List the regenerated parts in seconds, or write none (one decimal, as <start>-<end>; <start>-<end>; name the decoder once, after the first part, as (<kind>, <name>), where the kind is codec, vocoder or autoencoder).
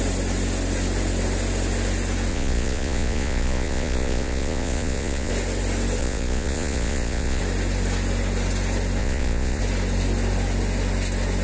2.3-5.3 (vocoder, Vocos); 6.0-7.4; 9.0-9.6